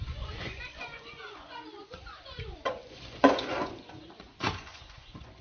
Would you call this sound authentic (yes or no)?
no